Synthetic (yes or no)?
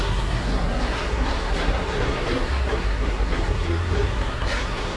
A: yes